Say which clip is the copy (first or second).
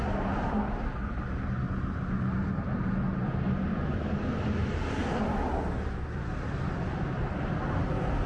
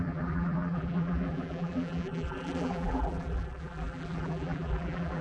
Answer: second